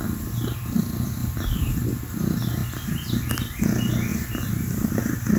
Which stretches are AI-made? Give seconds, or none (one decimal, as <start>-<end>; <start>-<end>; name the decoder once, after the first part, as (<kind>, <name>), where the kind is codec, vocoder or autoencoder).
1.2-1.8 (vocoder, BigVGAN v2); 4.1-5.4